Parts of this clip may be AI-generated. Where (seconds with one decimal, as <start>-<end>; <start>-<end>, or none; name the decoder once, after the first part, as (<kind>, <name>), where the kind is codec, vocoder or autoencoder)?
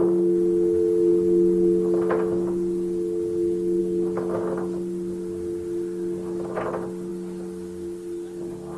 none